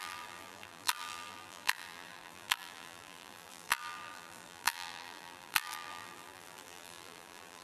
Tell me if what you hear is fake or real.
fake